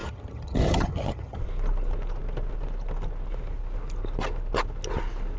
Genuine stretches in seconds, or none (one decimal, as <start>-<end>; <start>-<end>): 1.4-5.4